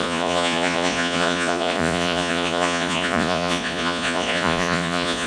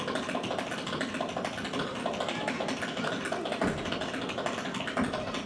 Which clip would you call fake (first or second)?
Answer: first